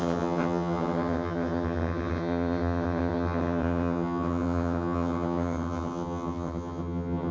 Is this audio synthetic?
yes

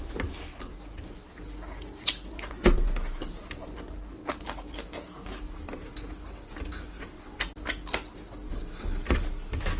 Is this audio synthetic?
no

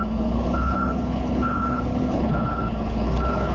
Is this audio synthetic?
yes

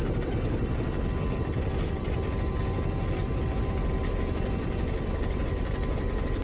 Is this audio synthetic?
yes